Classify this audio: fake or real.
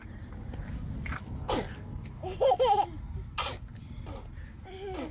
real